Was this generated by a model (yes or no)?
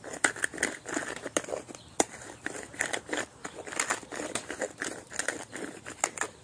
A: no